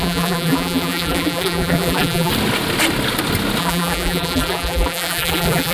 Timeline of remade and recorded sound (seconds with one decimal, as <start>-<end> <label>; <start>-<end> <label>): 0.0-2.3 remade; 2.3-3.6 recorded; 3.6-5.7 remade